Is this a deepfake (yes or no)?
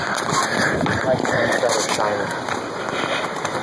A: no